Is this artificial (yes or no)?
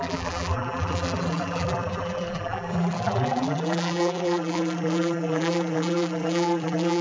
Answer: yes